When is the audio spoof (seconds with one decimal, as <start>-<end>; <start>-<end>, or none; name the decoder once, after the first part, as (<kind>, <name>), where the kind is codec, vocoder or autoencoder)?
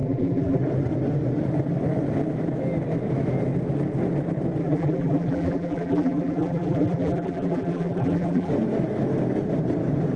0.0-0.6 (vocoder, BigVGAN v2); 4.6-8.5